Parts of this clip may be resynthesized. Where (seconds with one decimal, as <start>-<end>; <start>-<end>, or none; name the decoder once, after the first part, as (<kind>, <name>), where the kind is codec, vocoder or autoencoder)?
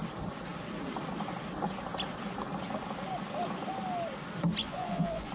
4.6-5.3 (vocoder, Vocos)